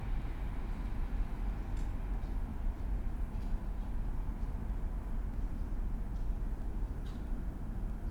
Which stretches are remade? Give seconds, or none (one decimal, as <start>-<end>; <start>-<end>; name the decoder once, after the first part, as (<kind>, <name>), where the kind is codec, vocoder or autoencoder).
2.5-3.4 (vocoder, BigVGAN v2); 6.7-7.6